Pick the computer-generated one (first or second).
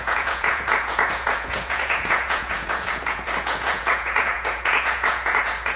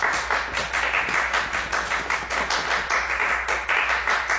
first